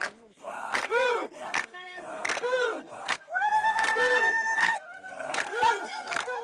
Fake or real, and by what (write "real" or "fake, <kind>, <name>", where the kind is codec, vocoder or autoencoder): fake, codec, SNAC